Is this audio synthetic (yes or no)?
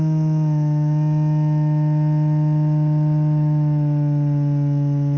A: no